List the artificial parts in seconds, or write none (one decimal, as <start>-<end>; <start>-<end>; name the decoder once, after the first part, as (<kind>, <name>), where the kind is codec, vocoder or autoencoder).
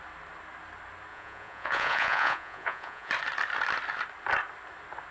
1.1-3.1 (vocoder, Vocos)